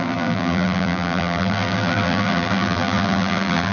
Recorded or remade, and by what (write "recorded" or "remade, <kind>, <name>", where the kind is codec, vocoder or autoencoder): remade, vocoder, BigVGAN v2